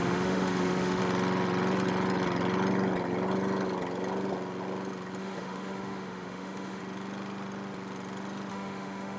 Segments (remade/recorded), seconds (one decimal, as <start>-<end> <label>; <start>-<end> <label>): 0.0-1.0 remade; 1.0-5.2 recorded; 5.2-6.8 remade; 6.8-8.5 recorded; 8.5-9.2 remade